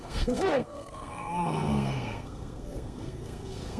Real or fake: fake